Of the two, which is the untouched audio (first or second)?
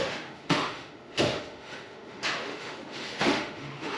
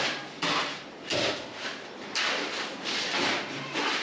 second